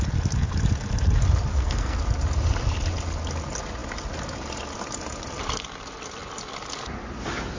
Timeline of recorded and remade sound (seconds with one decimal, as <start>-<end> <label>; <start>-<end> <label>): 0.0-1.5 recorded; 1.5-2.0 remade; 2.0-7.6 recorded